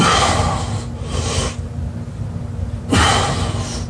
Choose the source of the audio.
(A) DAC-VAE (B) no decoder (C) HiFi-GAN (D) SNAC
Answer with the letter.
B